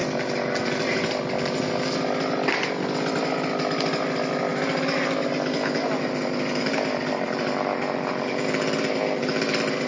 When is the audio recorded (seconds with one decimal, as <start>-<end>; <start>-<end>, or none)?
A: 0.0-3.3; 4.5-6.6; 7.7-8.3